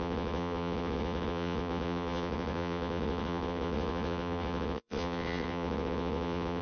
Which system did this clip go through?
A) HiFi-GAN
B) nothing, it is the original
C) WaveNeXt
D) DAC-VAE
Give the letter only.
C